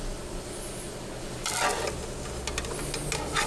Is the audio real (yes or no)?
yes